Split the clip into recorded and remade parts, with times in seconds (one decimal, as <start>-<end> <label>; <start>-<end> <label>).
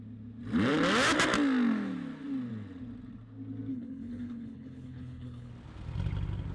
0.0-3.7 recorded; 3.7-5.5 remade; 5.5-6.5 recorded